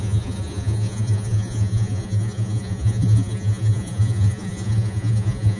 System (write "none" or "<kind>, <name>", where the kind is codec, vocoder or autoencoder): vocoder, Vocos